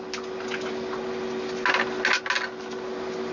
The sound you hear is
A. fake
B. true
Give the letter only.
B